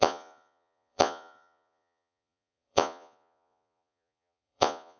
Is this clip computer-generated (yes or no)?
yes